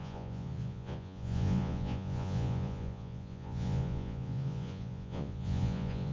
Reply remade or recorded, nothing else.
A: remade